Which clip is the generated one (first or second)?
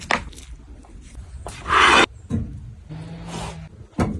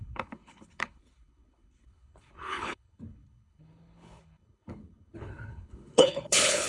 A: second